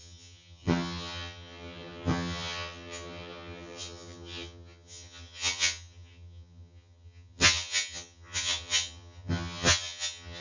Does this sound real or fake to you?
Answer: fake